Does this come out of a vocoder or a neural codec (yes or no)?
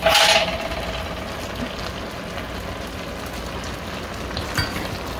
no